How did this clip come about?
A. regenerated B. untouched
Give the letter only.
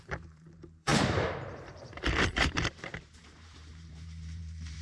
A